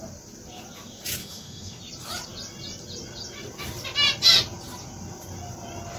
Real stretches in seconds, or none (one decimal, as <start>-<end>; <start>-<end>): 0.0-1.2; 1.8-6.0

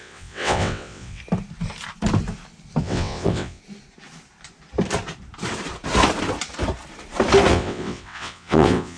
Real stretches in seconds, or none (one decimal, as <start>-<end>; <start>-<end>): 1.2-2.8; 3.6-7.5

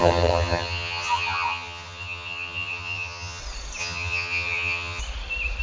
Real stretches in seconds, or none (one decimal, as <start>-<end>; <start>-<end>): 3.4-3.8; 5.0-5.6